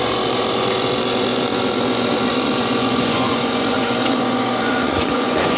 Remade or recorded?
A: remade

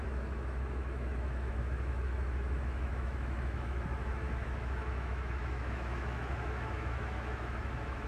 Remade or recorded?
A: remade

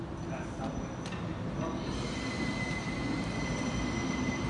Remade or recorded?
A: recorded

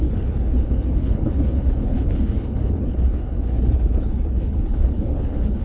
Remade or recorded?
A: remade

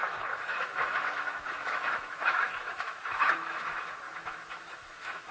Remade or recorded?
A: remade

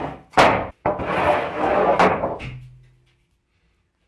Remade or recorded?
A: recorded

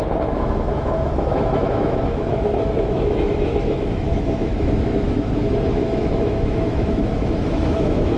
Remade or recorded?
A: remade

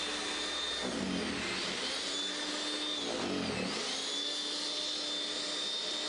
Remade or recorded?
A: recorded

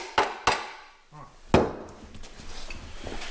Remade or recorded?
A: recorded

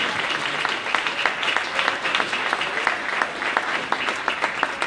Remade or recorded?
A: recorded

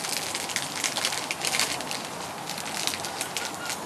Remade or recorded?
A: recorded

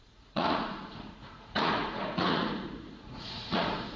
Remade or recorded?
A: remade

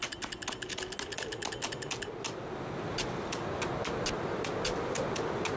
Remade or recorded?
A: recorded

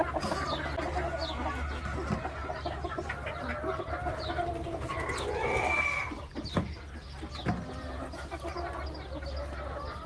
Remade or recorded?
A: recorded